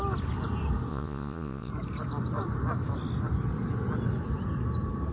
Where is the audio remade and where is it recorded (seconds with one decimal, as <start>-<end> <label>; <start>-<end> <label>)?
0.0-0.9 recorded; 0.9-1.7 remade; 1.7-5.1 recorded